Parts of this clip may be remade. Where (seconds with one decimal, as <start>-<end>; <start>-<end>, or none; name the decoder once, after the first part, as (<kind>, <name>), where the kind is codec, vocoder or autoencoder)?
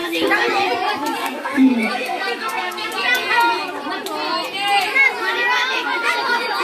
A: 1.2-2.9 (codec, SNAC)